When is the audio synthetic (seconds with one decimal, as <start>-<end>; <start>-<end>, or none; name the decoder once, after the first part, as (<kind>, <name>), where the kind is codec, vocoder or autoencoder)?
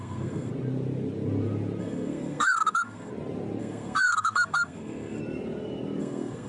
0.0-0.5 (codec, SNAC); 1.8-3.1; 3.6-5.2; 6.0-6.5